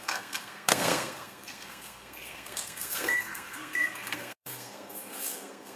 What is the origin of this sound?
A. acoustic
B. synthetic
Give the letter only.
B